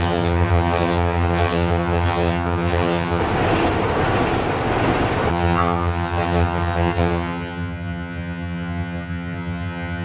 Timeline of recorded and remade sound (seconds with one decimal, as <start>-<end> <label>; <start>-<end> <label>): 0.0-3.2 remade; 3.2-5.3 recorded; 5.3-10.0 remade